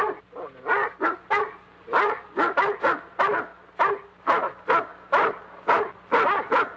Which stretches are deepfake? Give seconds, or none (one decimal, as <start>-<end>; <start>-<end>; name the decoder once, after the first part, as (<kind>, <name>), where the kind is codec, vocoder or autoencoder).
none